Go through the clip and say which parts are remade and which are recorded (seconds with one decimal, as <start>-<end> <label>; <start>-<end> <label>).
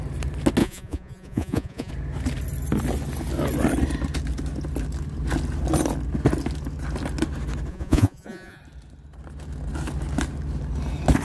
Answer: 0.0-0.6 recorded; 0.6-1.9 remade; 1.9-7.7 recorded; 7.7-8.6 remade; 8.6-11.2 recorded